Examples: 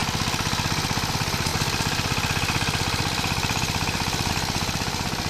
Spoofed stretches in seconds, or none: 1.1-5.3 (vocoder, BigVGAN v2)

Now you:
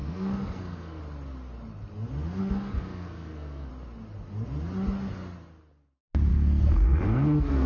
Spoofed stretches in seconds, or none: 0.0-1.0 (codec, SNAC); 2.4-3.7; 6.3-7.7

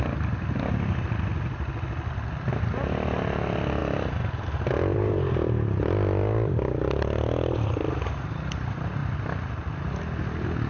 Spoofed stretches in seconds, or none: none

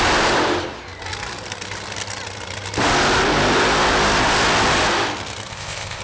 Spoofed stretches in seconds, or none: 5.5-6.0 (codec, ZipCodec)